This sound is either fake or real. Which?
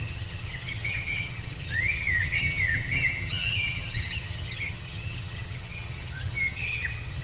fake